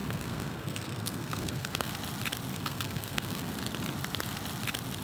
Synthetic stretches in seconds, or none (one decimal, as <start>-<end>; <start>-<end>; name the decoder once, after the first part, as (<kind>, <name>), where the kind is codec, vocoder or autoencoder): 0.0-1.9 (codec, SNAC); 2.5-3.5

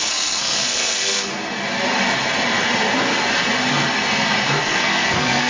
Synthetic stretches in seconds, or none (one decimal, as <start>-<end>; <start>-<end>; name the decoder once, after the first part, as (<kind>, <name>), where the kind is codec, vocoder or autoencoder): 0.0-1.3 (codec, SNAC); 4.6-5.5